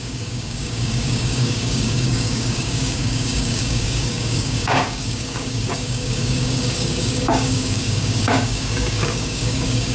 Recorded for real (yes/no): no